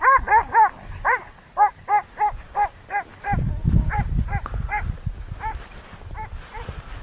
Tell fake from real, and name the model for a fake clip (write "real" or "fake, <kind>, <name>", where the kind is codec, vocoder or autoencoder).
real